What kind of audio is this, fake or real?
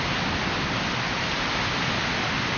real